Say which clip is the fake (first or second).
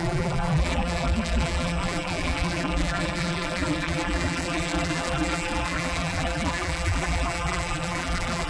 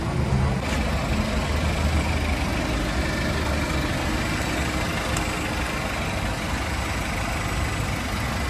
first